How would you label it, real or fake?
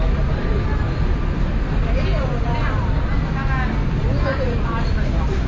real